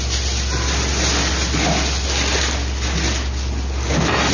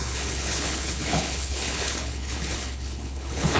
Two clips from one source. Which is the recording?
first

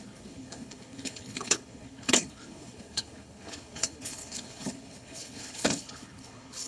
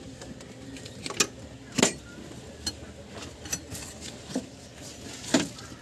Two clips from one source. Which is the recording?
second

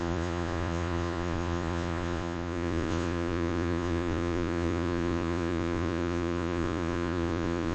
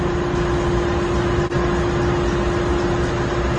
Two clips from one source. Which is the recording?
second